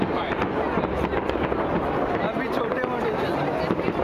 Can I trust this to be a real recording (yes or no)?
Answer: yes